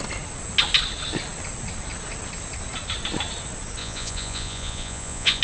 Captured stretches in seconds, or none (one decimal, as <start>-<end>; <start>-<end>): 0.0-3.8